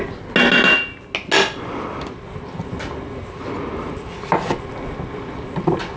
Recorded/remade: recorded